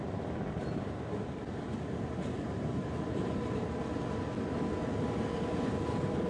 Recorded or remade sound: recorded